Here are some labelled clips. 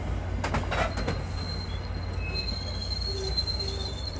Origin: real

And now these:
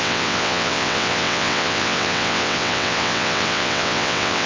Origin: fake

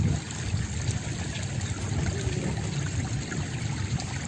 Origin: real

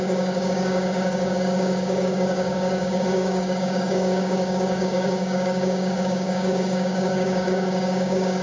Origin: fake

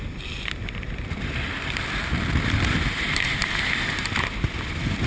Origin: fake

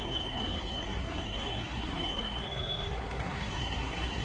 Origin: fake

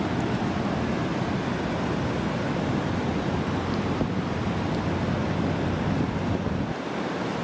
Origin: real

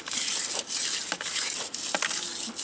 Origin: real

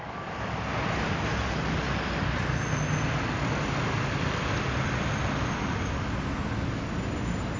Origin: real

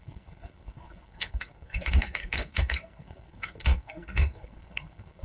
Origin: fake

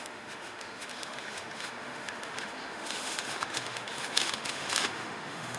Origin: fake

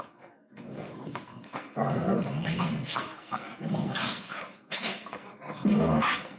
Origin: fake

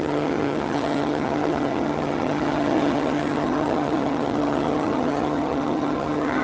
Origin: fake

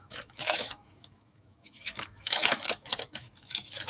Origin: fake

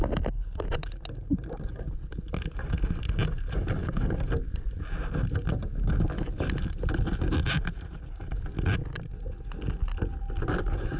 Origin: real